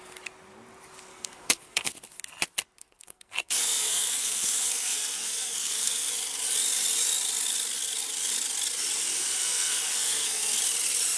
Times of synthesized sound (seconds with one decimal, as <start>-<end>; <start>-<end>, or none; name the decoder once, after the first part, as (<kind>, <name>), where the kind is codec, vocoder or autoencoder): 1.1-1.9 (codec, SNAC); 2.8-6.1; 9.4-10.6